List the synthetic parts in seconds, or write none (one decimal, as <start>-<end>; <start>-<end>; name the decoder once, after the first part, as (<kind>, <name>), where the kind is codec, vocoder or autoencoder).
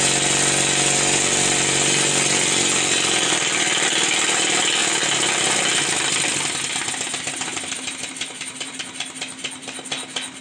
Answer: 7.5-8.7 (vocoder, BigVGAN v2)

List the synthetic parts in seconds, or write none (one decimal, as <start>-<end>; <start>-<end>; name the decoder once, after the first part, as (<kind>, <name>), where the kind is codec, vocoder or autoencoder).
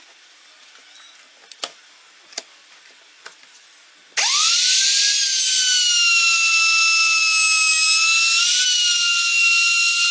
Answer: none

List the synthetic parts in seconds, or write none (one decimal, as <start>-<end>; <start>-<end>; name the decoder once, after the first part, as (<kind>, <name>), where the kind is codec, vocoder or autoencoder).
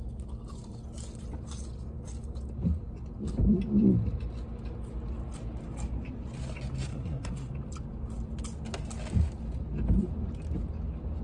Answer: 6.9-7.5 (codec, SNAC)